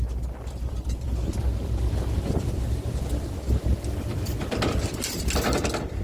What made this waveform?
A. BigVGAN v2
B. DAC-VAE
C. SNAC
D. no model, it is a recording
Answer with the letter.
A